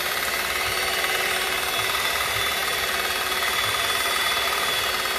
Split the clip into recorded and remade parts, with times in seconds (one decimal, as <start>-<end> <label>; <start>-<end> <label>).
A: 0.0-5.2 recorded